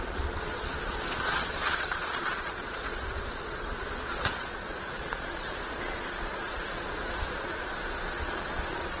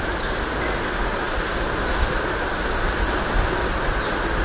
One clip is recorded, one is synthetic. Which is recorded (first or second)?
second